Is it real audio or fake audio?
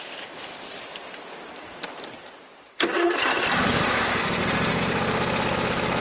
real